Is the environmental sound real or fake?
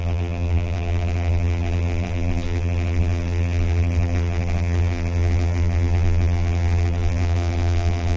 fake